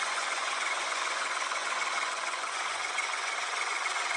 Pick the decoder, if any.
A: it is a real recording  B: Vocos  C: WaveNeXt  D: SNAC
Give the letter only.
B